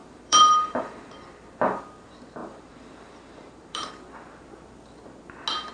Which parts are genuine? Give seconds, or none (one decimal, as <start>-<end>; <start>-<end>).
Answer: 1.1-2.4; 3.9-5.7